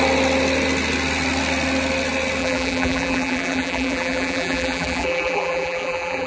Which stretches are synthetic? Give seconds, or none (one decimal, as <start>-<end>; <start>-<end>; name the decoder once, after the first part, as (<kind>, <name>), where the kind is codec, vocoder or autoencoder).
2.4-6.3 (vocoder, BigVGAN v2)

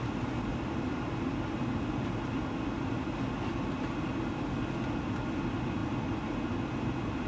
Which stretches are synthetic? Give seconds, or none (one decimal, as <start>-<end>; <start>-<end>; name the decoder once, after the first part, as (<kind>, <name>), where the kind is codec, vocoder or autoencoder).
0.5-1.6 (vocoder, BigVGAN v2)

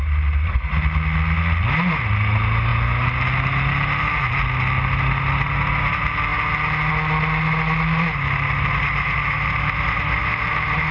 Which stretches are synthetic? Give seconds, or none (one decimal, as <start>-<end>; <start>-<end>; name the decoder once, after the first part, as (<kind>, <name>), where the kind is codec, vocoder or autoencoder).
10.2-10.9 (vocoder, BigVGAN v2)

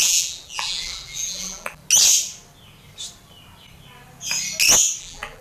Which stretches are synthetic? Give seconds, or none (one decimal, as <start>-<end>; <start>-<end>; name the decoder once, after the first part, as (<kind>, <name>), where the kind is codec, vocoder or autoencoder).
0.0-1.8 (vocoder, BigVGAN v2); 5.0-5.4

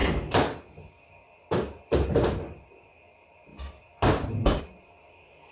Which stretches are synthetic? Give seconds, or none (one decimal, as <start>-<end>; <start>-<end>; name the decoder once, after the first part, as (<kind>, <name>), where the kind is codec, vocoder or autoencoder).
none